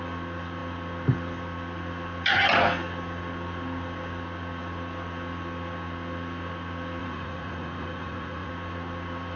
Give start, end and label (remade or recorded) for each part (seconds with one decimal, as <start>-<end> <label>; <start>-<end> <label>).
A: 0.0-7.0 recorded; 7.0-8.5 remade; 8.5-9.4 recorded